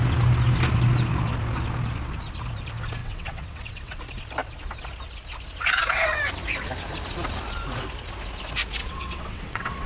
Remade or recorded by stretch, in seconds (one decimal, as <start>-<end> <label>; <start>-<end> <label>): 0.0-3.0 recorded; 3.0-4.0 remade; 4.0-8.8 recorded; 8.8-9.9 remade